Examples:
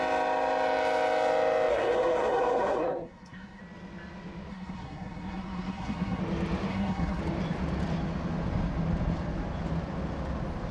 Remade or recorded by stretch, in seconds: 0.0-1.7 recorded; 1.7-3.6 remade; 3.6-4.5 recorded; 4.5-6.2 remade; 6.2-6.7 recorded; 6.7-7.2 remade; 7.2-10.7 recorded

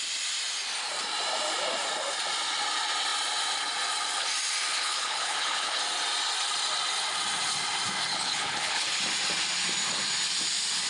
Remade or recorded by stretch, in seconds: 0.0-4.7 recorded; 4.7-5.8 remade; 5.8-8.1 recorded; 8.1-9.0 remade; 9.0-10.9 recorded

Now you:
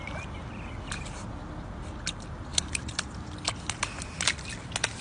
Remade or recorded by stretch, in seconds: 0.0-2.5 recorded; 2.5-3.0 remade; 3.0-5.0 recorded

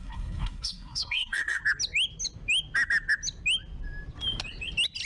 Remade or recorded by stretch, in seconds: 0.0-1.6 remade; 1.6-5.1 recorded

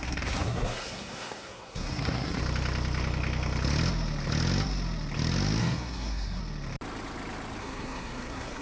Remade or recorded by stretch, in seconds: 0.0-2.4 remade; 2.4-5.6 recorded; 5.6-6.4 remade; 6.4-7.6 recorded; 7.6-8.6 remade

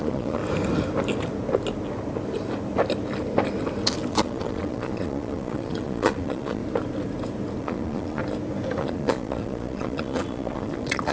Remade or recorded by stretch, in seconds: 0.0-0.4 remade; 0.4-4.1 recorded; 4.1-6.6 remade; 6.6-7.6 recorded; 7.6-8.2 remade; 8.2-8.8 recorded; 8.8-11.1 remade

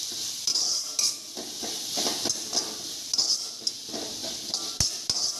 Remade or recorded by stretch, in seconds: 0.0-5.4 recorded

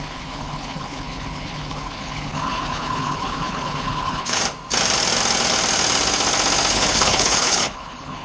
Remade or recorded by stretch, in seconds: 0.0-4.4 remade; 4.4-6.7 recorded; 6.7-8.2 remade